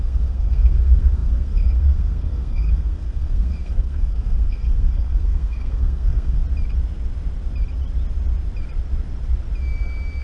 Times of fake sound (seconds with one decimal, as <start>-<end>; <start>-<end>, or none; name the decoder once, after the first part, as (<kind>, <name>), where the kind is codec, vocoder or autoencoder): 0.0-6.4 (codec, SNAC)